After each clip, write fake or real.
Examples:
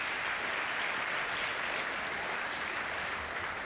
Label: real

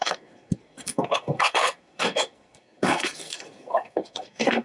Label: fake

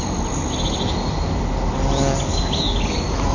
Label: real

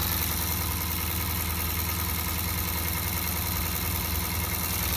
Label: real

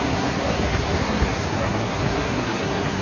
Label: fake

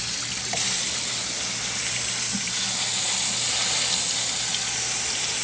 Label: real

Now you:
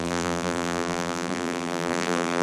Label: fake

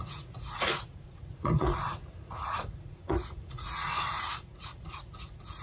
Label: fake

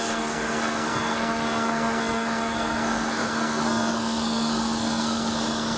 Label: fake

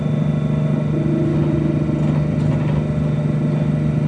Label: real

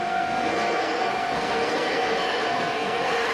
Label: fake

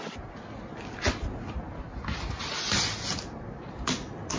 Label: real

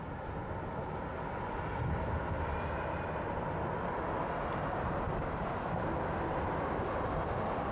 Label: real